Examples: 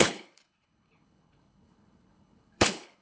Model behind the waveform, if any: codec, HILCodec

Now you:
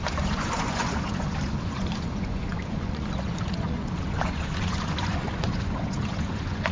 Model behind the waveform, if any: vocoder, Vocos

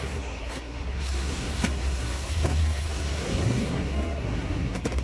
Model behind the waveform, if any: codec, SNAC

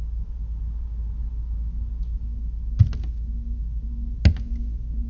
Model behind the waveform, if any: none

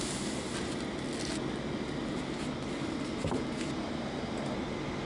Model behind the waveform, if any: none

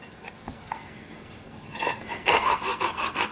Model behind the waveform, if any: codec, SNAC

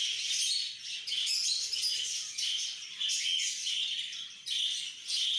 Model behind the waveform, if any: none